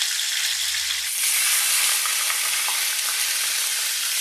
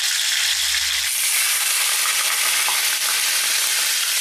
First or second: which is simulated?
first